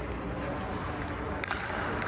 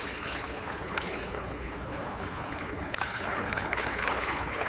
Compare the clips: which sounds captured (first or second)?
first